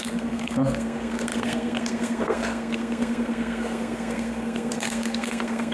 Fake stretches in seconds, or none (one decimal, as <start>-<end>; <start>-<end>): 0.0-5.7